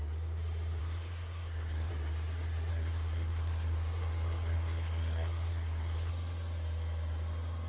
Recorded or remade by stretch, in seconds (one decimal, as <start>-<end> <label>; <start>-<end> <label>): 0.0-0.8 recorded; 0.8-1.9 remade; 1.9-2.7 recorded; 2.7-6.1 remade; 6.1-7.7 recorded